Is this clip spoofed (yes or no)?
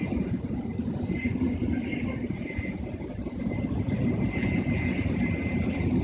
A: no